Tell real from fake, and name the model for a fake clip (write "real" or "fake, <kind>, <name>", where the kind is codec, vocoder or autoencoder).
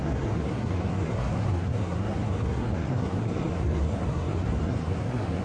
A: fake, codec, SNAC